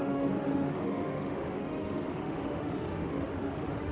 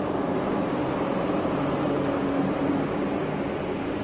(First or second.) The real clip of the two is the second